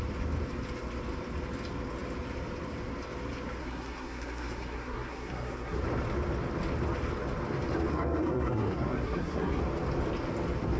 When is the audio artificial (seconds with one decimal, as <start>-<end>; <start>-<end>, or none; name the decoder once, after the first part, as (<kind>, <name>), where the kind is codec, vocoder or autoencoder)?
3.6-5.8 (codec, SNAC); 7.9-9.6